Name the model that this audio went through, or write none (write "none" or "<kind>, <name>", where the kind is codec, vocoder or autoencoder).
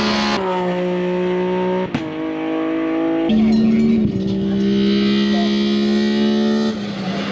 none